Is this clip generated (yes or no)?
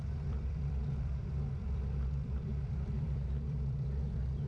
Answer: yes